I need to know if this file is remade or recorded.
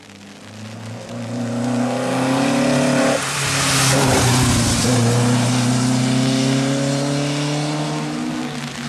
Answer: recorded